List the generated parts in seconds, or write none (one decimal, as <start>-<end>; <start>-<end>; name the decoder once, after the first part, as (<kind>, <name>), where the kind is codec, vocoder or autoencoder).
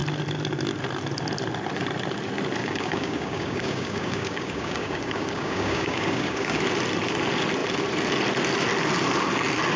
2.6-6.6 (codec, DAC)